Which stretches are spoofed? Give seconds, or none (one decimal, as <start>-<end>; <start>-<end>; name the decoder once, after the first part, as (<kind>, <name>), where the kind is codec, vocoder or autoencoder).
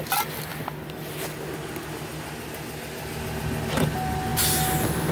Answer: none